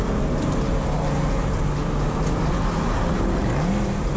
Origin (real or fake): real